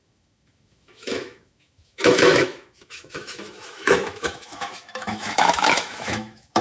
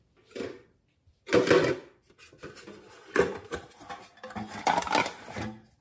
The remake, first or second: first